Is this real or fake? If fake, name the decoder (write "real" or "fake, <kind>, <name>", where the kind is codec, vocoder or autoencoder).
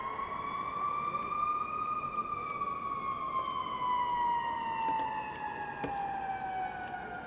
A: real